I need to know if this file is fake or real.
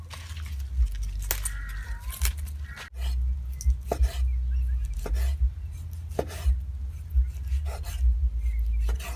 real